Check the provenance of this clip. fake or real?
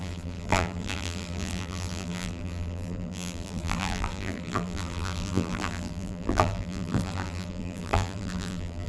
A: fake